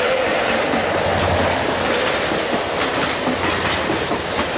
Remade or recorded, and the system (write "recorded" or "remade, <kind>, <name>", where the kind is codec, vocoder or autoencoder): recorded